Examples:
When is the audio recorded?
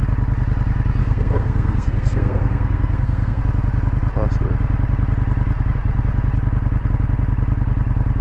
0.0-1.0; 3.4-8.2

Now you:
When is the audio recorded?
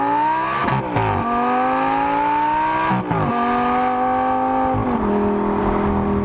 0.0-6.2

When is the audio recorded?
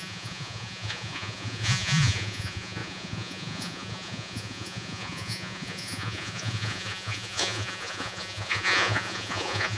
none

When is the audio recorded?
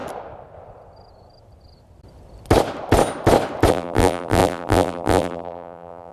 0.0-3.7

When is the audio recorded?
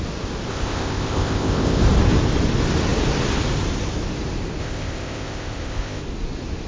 0.0-0.5; 1.8-4.6; 6.0-6.7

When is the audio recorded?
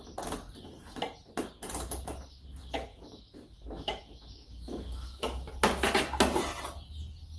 0.0-2.9; 5.5-7.4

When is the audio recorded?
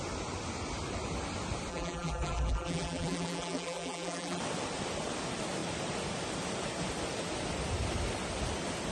0.0-1.7; 4.4-8.9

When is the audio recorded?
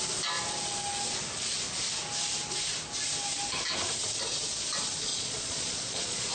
0.0-5.1